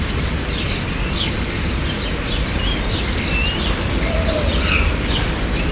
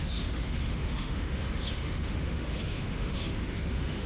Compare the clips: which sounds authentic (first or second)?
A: first